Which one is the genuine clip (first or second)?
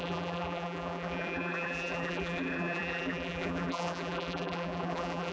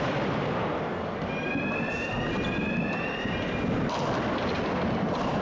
second